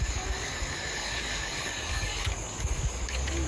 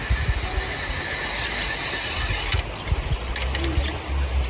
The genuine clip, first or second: second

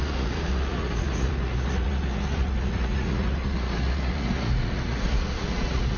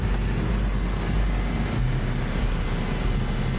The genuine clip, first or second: second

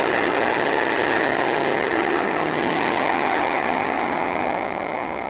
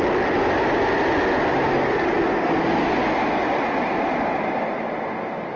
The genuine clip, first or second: second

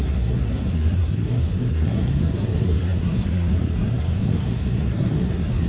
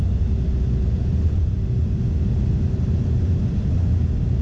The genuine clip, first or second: second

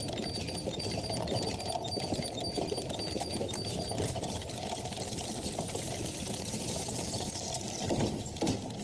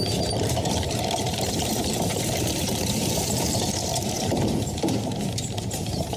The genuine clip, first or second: first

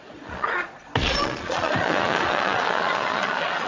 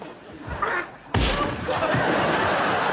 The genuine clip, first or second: second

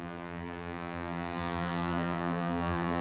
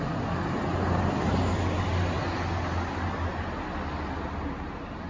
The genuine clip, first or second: second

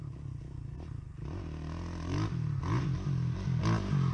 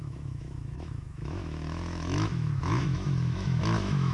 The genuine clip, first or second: first